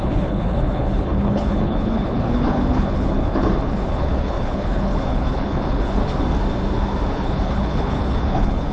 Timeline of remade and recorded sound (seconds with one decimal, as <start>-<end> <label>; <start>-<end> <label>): 0.0-6.0 remade; 6.0-7.1 recorded; 7.1-8.7 remade